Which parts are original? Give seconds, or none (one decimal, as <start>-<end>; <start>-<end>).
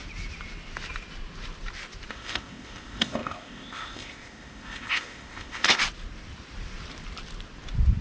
0.0-2.1; 5.8-8.0